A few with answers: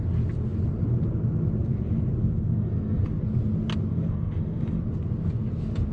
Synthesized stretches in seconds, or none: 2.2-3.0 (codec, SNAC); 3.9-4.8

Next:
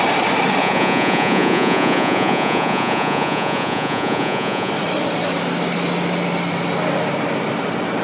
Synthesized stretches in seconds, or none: 0.6-4.7 (vocoder, Vocos)

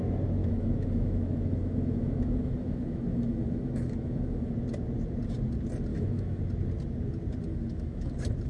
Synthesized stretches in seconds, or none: 0.4-4.5 (autoencoder, DAC-VAE); 5.9-6.4; 7.5-8.1